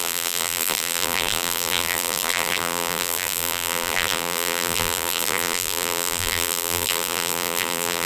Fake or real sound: fake